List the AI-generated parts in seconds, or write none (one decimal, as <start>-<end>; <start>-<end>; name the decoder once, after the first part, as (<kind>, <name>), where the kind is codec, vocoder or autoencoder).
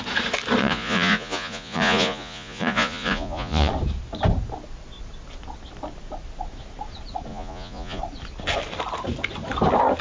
0.6-3.7 (vocoder, Vocos); 7.3-8.0